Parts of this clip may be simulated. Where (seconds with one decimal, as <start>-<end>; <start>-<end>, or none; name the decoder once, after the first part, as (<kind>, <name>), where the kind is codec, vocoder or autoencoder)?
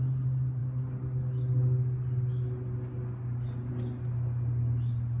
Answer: none